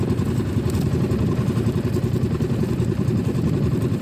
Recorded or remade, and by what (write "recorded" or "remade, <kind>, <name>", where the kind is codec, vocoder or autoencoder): recorded